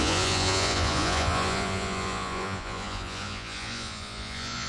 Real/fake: fake